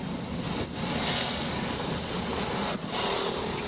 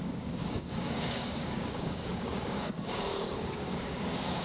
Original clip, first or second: first